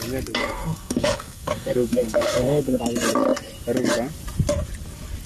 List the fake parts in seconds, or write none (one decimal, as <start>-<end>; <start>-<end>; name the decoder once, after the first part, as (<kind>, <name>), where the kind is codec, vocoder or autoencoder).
0.4-2.8 (codec, SNAC)